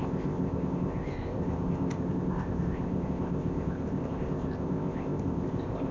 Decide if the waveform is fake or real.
fake